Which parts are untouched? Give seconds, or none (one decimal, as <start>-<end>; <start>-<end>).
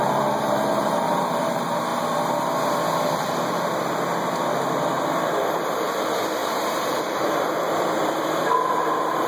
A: 1.9-5.1